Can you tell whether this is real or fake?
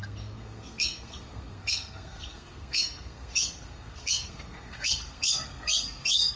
fake